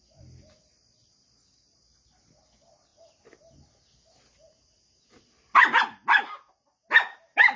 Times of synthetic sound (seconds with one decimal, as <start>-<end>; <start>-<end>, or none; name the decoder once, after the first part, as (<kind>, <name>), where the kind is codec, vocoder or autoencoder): none